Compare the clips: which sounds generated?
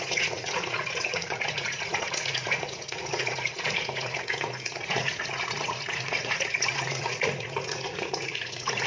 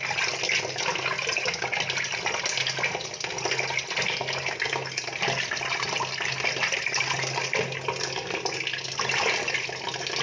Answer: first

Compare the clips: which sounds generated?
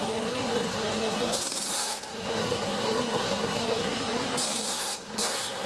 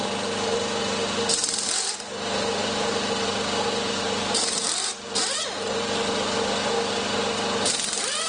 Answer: first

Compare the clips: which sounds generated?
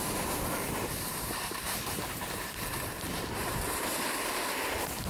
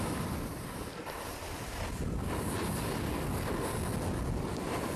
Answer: first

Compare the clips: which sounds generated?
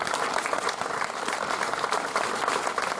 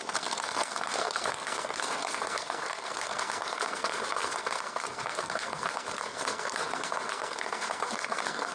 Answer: second